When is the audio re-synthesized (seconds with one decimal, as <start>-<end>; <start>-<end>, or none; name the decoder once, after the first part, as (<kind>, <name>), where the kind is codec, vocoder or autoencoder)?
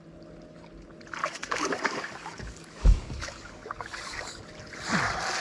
1.2-4.4 (codec, DAC)